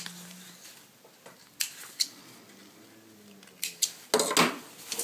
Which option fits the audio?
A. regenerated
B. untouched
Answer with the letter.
B